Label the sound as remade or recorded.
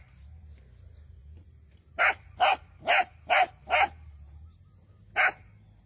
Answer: recorded